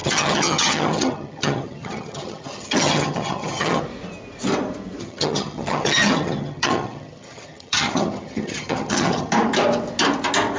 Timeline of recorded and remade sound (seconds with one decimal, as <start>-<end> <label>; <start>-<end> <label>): 0.0-3.8 remade; 3.8-5.0 recorded; 5.0-9.3 remade; 9.3-10.6 recorded